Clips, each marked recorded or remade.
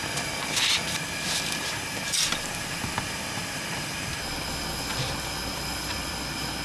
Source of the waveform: recorded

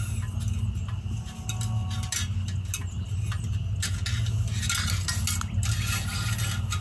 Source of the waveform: recorded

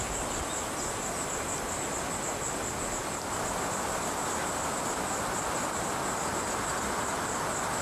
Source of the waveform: recorded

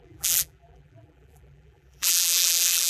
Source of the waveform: remade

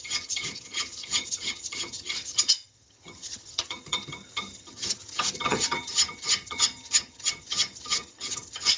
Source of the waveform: remade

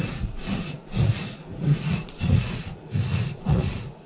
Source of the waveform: remade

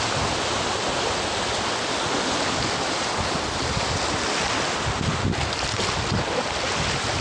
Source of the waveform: recorded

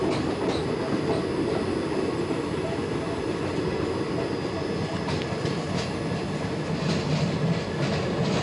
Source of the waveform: recorded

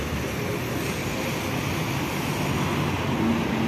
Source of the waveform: recorded